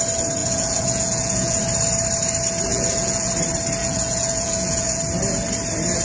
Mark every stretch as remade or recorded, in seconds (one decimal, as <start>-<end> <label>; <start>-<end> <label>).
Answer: 0.0-0.4 recorded; 0.4-1.6 remade; 1.6-2.7 recorded; 2.7-3.3 remade; 3.3-3.8 recorded; 3.8-5.0 remade; 5.0-6.0 recorded